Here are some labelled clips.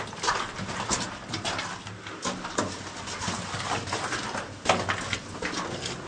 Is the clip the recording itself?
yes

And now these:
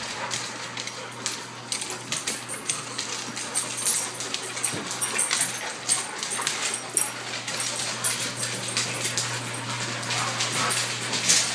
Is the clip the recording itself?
yes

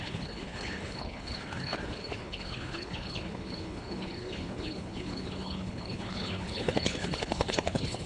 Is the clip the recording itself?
no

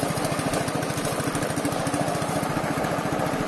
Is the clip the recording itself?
yes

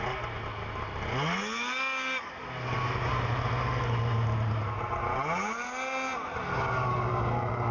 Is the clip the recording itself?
yes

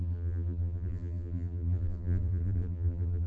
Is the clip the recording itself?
no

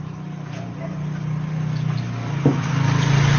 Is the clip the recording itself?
yes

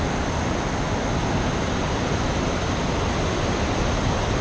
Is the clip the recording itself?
yes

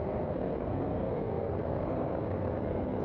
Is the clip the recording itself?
no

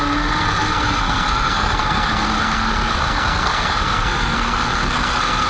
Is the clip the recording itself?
no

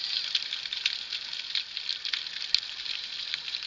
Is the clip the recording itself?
yes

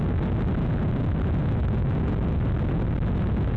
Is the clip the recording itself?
yes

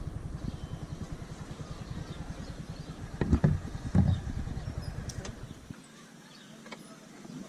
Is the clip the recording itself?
yes